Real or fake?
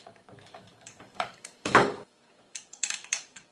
fake